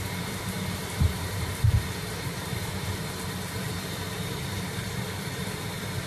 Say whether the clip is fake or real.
fake